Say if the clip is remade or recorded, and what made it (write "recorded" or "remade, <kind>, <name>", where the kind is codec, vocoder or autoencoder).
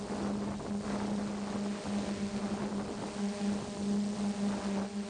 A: recorded